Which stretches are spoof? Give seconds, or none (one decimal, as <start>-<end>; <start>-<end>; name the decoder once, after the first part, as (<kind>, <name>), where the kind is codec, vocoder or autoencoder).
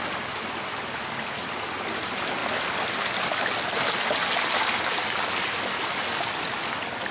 none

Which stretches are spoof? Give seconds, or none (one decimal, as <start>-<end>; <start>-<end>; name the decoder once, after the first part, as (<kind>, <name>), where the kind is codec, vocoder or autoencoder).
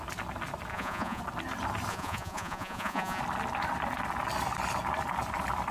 0.7-1.2 (vocoder, Vocos); 1.9-3.2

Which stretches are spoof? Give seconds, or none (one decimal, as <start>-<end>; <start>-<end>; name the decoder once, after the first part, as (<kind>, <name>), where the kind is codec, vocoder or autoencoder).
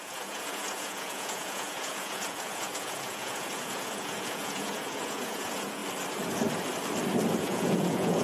0.0-5.8 (vocoder, Vocos); 7.4-8.2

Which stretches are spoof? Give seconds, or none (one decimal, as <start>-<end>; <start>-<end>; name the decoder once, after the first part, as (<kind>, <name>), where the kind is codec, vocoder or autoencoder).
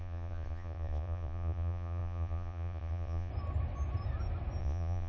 0.0-3.3 (vocoder, Vocos); 4.6-5.1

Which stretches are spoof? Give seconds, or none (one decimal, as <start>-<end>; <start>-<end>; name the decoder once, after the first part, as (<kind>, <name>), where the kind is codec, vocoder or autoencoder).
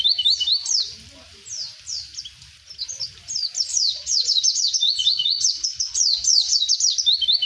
3.7-6.7 (vocoder, Vocos)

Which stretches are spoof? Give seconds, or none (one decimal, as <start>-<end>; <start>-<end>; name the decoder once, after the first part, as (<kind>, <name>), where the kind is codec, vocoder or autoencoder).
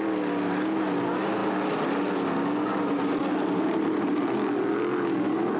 none